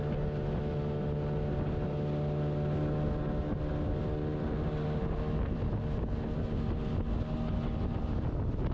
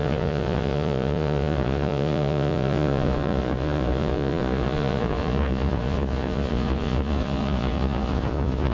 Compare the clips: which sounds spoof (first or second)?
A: second